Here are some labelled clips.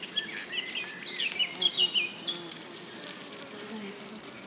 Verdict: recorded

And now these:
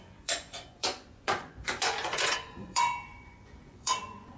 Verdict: remade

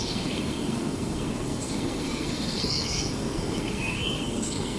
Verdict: remade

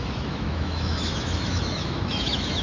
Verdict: remade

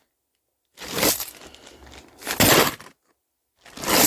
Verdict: recorded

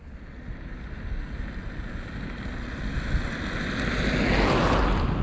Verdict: recorded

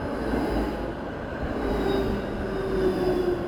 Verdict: recorded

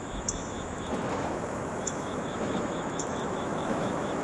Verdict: remade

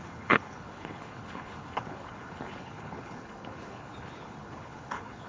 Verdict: remade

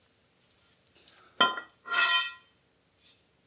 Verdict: recorded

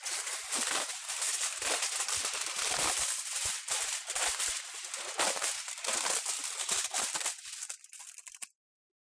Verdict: recorded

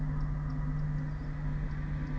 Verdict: recorded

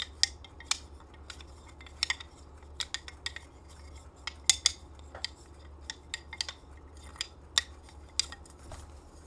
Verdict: recorded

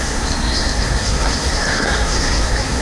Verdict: remade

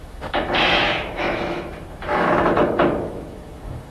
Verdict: remade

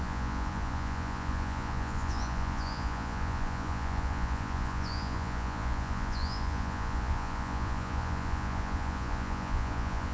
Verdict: remade